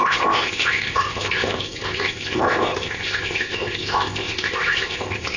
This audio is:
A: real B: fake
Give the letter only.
B